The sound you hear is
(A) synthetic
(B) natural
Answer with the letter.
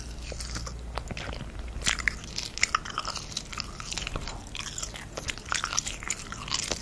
B